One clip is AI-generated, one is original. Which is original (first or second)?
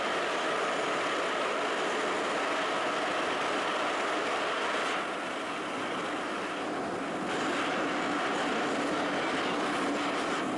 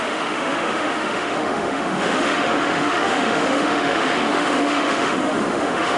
first